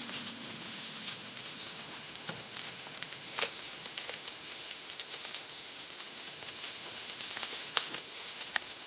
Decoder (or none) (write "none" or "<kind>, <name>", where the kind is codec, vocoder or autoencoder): autoencoder, DAC-VAE